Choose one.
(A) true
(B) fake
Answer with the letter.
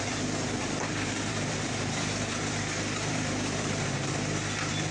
B